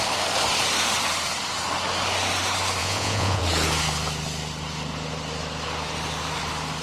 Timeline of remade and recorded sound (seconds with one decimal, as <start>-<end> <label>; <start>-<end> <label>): 0.0-2.8 recorded; 2.8-3.4 remade; 3.4-6.8 recorded